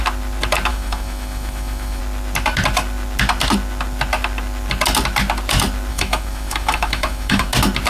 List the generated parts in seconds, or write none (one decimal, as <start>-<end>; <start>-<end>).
0.7-2.0; 5.9-7.5